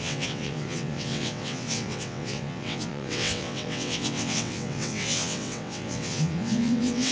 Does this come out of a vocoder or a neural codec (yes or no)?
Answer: yes